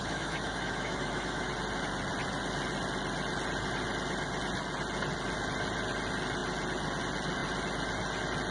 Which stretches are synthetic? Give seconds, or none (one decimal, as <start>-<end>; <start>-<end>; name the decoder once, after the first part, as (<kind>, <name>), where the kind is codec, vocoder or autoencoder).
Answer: 0.0-1.5 (autoencoder, DAC-VAE)